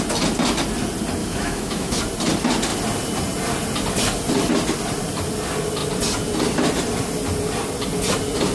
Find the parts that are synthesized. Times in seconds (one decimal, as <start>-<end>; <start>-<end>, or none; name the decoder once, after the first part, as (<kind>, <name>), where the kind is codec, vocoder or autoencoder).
1.2-2.0 (autoencoder, DAC-VAE)